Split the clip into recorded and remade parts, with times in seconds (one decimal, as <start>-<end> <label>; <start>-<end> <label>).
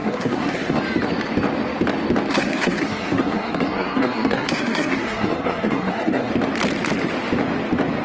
0.0-0.8 remade; 0.8-2.3 recorded; 2.3-6.3 remade; 6.3-8.0 recorded